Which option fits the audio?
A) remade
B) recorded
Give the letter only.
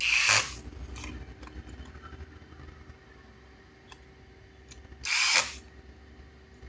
B